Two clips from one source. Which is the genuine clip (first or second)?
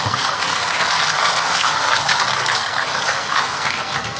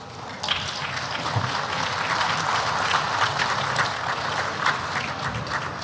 second